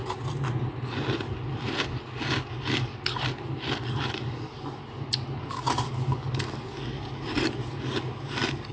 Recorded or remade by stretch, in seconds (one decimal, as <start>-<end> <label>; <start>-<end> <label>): 0.0-2.5 recorded; 2.5-2.9 remade; 2.9-3.8 recorded; 3.8-4.8 remade; 4.8-5.4 recorded; 5.4-8.7 remade